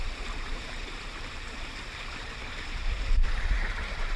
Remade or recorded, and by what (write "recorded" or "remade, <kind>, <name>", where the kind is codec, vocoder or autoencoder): remade, vocoder, BigVGAN v2